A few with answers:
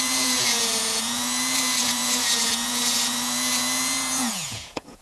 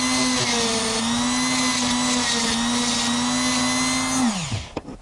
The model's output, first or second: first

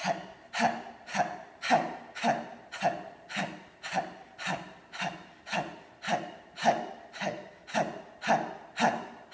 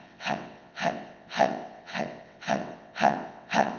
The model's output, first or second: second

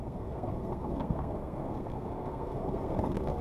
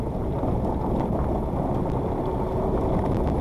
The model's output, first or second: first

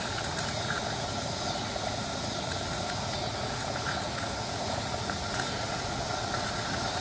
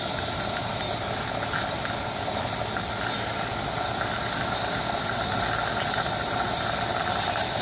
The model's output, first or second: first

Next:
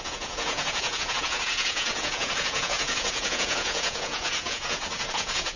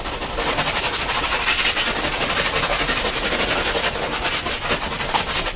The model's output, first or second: first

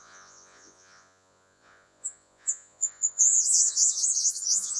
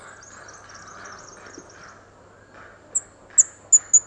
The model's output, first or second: first